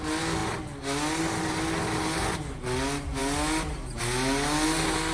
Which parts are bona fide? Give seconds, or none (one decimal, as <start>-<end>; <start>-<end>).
0.0-5.1